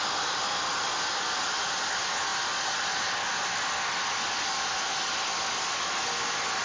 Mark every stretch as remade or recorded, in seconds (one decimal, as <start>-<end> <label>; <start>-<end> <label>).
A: 0.0-6.6 recorded